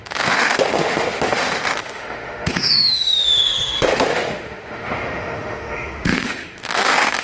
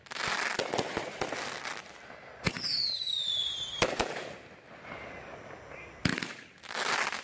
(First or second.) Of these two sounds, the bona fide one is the second